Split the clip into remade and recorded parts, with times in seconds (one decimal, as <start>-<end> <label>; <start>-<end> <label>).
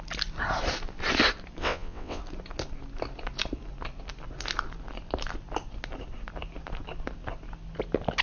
0.0-1.6 recorded; 1.6-2.2 remade; 2.2-8.2 recorded